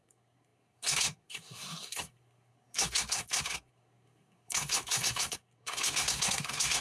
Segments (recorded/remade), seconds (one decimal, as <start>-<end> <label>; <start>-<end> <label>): 0.0-6.8 remade